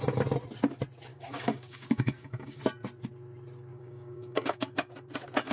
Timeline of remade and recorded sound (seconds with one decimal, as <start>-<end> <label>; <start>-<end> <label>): 0.0-1.1 recorded; 1.1-2.6 remade; 2.6-3.7 recorded; 3.7-4.9 remade; 4.9-5.5 recorded